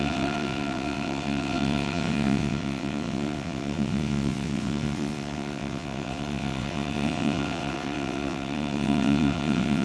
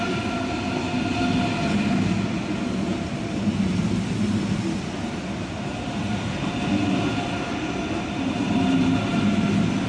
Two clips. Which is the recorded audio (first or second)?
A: second